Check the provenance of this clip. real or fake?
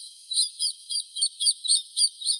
fake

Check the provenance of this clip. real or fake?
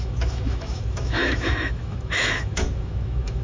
fake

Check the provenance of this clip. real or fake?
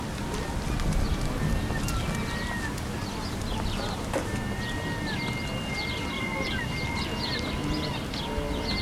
real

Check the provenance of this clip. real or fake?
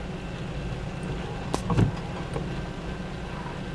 real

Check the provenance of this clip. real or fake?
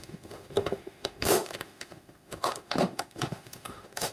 fake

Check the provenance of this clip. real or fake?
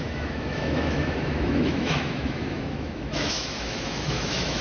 fake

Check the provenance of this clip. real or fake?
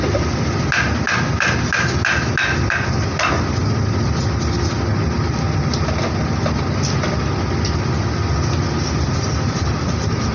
real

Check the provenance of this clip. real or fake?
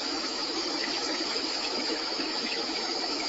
fake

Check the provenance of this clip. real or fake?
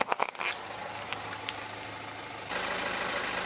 real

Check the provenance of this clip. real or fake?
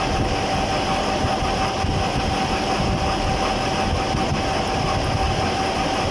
real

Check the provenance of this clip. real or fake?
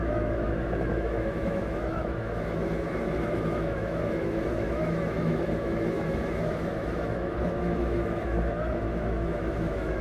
fake